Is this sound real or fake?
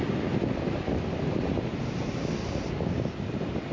real